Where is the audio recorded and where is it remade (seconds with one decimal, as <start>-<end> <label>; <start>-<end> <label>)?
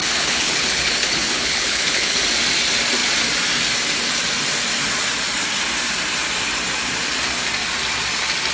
0.0-2.2 remade; 2.2-8.5 recorded